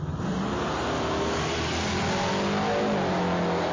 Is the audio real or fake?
real